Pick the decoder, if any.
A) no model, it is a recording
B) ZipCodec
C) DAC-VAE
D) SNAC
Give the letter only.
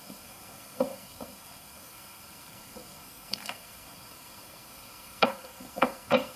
D